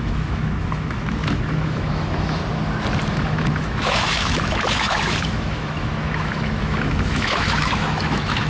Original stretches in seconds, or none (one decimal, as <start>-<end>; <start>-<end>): 2.4-3.1